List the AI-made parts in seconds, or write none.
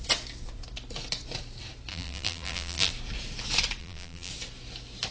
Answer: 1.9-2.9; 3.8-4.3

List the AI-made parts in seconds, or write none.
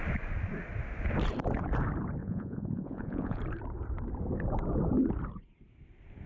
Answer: 2.2-3.4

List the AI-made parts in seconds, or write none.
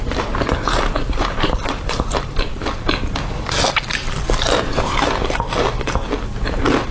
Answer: 0.0-2.5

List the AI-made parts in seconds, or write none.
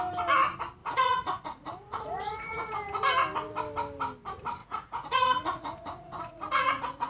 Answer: 0.8-2.7; 4.6-7.1